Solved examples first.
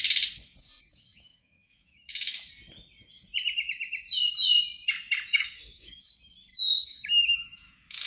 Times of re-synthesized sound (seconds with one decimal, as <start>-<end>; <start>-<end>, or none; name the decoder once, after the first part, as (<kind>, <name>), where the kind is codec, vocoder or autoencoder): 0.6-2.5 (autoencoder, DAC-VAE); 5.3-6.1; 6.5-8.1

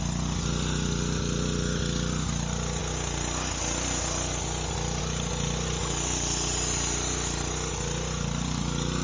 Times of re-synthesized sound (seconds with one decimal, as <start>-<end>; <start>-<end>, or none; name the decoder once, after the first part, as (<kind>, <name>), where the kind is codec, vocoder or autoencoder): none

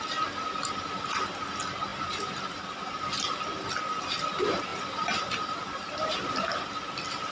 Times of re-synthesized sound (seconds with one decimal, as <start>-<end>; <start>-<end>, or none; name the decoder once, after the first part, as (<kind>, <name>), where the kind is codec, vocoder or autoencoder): none